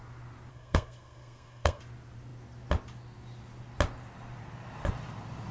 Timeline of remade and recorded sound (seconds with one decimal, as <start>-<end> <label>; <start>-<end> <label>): 0.0-0.5 recorded; 0.5-1.8 remade; 1.8-5.5 recorded